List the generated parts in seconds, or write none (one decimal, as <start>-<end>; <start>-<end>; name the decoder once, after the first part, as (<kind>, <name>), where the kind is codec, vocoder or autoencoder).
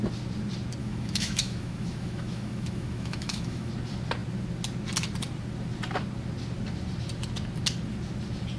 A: 0.8-3.7 (autoencoder, DAC-VAE)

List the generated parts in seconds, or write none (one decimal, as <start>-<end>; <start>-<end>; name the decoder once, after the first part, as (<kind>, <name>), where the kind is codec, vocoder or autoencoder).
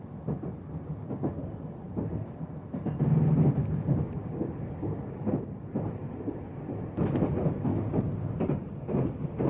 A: 3.6-5.3 (codec, DAC); 7.7-8.7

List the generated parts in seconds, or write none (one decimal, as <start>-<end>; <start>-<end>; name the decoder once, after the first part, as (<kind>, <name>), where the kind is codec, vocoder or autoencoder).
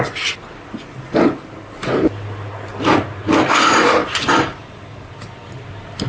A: 4.0-5.1 (vocoder, BigVGAN v2)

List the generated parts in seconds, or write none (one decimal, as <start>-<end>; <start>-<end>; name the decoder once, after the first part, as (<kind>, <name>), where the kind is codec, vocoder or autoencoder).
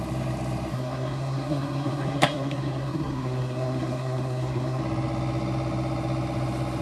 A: 0.7-4.8 (codec, SNAC)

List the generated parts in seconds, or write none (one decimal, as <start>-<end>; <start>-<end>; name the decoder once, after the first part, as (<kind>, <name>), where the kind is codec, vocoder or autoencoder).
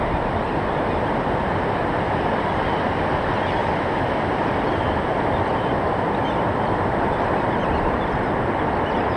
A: 3.6-4.1 (vocoder, BigVGAN v2); 5.3-7.1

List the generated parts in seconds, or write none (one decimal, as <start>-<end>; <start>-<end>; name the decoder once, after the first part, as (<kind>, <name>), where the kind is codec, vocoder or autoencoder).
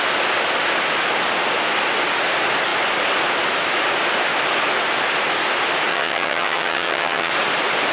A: 5.9-7.3 (vocoder, HiFi-GAN)